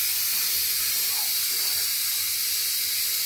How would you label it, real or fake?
real